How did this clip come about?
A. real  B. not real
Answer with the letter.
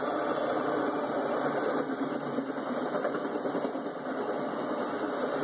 A